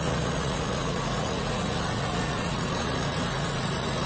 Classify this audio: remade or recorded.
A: remade